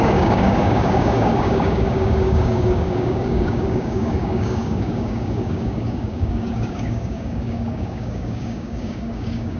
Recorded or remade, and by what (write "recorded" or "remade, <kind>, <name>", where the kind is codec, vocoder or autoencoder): remade, codec, DAC